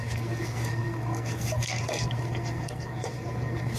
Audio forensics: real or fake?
fake